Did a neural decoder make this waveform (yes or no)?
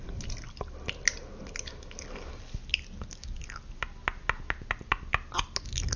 no